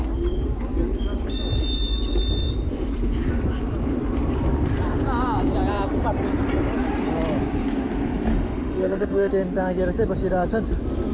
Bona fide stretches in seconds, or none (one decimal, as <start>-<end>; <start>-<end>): 0.0-8.3; 9.3-11.1